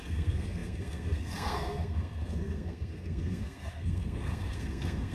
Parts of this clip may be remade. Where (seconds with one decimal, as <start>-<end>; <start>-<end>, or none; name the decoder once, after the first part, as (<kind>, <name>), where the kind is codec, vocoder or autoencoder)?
0.0-5.1 (codec, SNAC)